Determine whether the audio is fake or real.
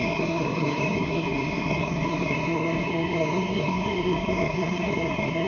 fake